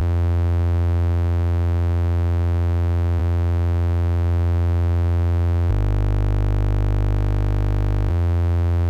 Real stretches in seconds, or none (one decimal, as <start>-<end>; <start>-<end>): 5.7-8.1